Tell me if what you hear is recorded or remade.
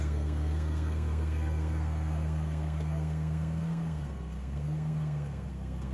remade